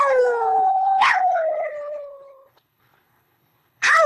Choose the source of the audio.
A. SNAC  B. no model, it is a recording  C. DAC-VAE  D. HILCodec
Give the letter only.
D